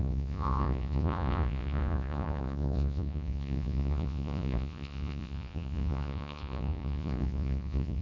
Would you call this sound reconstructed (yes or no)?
yes